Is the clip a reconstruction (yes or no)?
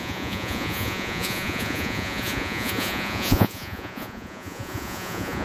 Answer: yes